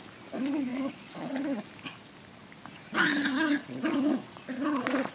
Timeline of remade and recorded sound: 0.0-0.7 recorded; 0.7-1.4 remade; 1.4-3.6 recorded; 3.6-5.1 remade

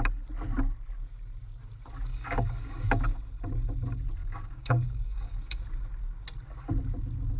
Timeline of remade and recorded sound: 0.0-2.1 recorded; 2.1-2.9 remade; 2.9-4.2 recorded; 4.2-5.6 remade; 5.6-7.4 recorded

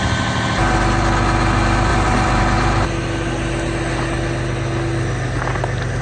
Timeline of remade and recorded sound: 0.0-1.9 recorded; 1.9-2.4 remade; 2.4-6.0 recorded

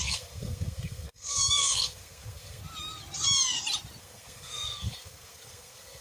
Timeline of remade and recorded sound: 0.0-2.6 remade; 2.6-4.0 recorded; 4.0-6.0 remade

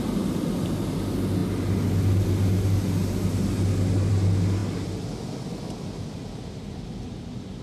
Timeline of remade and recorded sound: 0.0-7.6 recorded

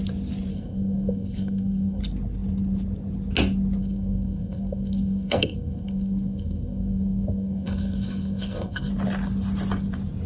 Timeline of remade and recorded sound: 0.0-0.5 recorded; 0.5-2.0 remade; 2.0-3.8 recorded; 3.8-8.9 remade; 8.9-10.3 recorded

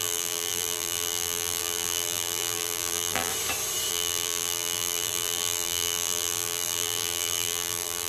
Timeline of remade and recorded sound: 0.0-3.3 remade; 3.3-3.9 recorded; 3.9-8.1 remade

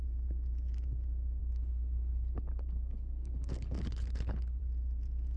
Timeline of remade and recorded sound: 0.0-1.4 recorded; 1.4-4.6 remade; 4.6-5.4 recorded